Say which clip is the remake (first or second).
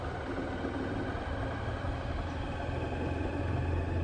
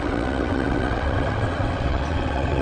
second